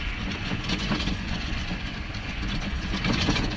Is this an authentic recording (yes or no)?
no